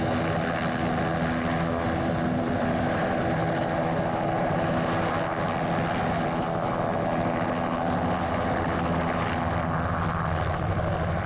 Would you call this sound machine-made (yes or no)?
no